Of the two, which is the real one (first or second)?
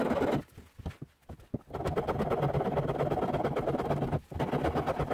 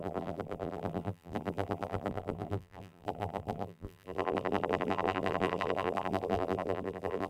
first